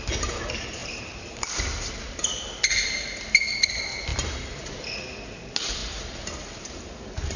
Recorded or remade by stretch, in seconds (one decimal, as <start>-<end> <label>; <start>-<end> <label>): 0.0-0.8 recorded; 0.8-2.2 remade; 2.2-5.8 recorded; 5.8-7.4 remade